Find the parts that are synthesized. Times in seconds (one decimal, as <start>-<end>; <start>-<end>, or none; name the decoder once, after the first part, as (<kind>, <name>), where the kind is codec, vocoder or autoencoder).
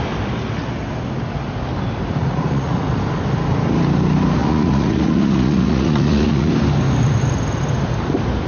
2.2-2.8 (vocoder, Vocos); 4.4-6.5